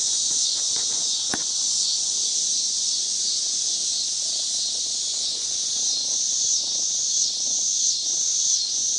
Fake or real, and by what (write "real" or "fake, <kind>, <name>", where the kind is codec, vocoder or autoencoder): fake, vocoder, Vocos